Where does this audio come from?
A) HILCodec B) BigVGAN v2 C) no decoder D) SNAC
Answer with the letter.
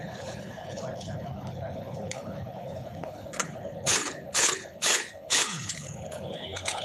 A